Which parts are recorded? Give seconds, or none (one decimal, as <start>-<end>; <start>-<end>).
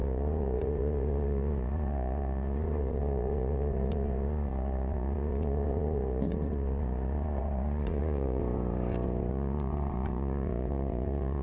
8.4-9.3